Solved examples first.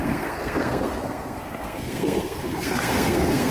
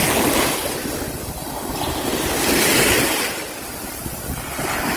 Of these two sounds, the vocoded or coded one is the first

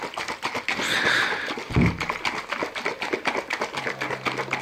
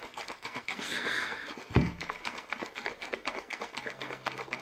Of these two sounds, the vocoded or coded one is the second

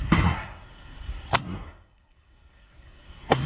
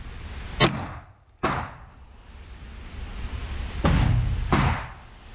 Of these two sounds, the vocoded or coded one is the first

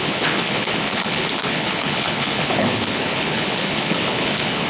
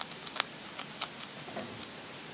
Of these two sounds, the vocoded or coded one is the first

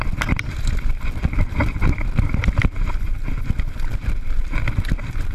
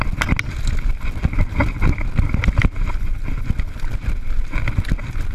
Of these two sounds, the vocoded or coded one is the first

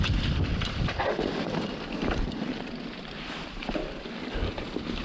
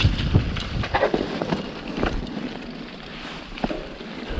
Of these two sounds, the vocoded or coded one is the first